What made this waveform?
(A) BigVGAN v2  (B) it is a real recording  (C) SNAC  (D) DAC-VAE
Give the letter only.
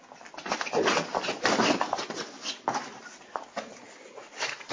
B